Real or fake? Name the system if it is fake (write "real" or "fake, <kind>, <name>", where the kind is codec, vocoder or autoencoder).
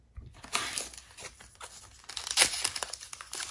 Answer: real